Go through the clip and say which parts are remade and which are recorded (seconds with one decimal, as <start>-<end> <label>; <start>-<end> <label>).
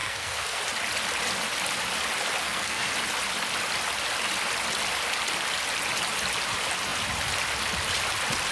0.0-0.6 remade; 0.6-2.4 recorded; 2.4-2.9 remade; 2.9-8.5 recorded